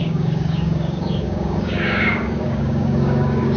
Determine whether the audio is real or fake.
fake